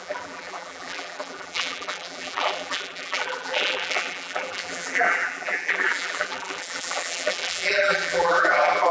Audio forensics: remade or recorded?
remade